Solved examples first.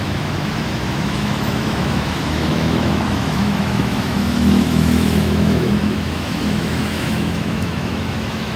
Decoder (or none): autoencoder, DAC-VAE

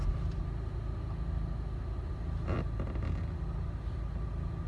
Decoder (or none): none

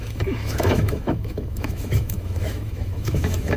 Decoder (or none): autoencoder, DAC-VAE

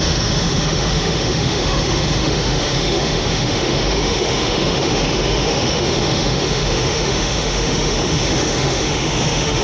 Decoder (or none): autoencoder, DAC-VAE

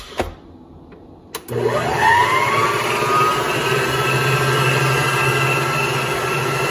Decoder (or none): none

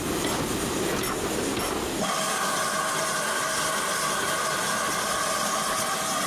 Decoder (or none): none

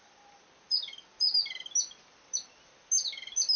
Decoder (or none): none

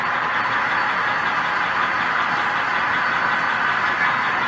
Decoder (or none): none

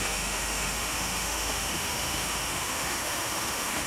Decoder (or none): autoencoder, DAC-VAE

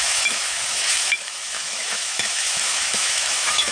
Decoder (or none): autoencoder, DAC-VAE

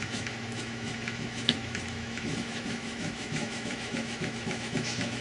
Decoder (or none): autoencoder, DAC-VAE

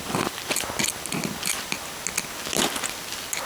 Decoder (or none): none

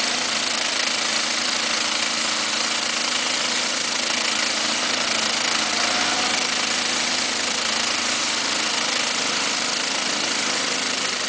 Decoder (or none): none